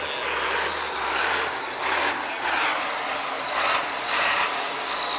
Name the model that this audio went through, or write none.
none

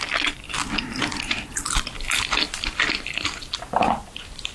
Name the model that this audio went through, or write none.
none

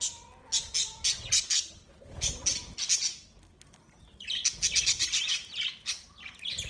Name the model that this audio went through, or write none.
none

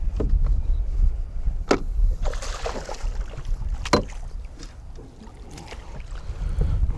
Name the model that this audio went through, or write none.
none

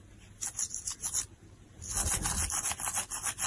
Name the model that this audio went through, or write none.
none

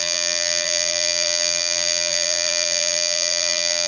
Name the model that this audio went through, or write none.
vocoder, BigVGAN v2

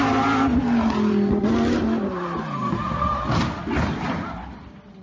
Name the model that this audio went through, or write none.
none